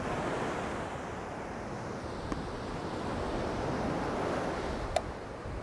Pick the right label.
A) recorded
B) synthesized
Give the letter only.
A